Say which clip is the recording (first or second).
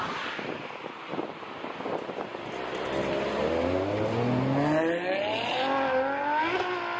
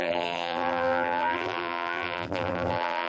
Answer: first